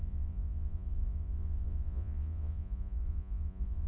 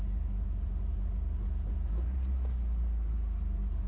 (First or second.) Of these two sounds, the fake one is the first